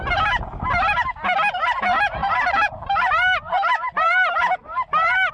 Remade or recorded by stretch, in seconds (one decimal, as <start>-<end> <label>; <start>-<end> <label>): 0.0-2.2 recorded; 2.2-5.3 remade

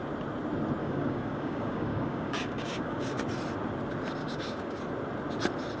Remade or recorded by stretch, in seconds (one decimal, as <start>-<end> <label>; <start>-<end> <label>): 0.0-0.8 recorded; 0.8-3.2 remade; 3.2-4.2 recorded; 4.2-4.8 remade; 4.8-5.8 recorded

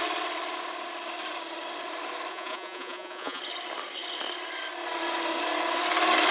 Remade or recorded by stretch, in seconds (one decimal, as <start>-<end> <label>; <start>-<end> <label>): 0.0-2.3 recorded; 2.3-3.4 remade; 3.4-6.3 recorded

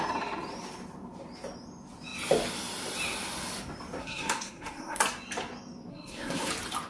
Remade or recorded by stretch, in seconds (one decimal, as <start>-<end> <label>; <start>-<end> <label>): 0.0-4.0 recorded; 4.0-5.0 remade; 5.0-5.9 recorded; 5.9-6.5 remade; 6.5-6.9 recorded

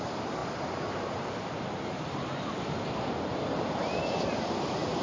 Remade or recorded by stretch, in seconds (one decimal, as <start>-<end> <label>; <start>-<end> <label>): 0.0-0.4 remade; 0.4-2.6 recorded; 2.6-3.3 remade; 3.3-3.8 recorded; 3.8-5.0 remade

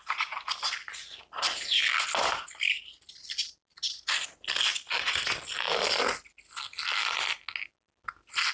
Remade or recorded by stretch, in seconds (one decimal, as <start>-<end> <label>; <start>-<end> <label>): 0.0-8.5 recorded